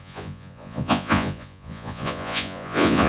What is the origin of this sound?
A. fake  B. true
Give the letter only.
A